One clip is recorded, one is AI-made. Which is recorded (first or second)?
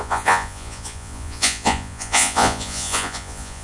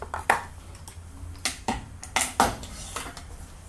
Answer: second